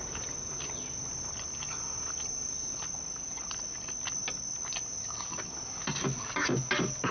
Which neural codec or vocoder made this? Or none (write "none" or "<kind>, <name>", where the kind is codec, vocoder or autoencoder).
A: none